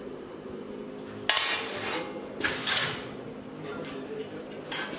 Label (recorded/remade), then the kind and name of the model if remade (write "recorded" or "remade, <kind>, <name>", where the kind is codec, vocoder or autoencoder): recorded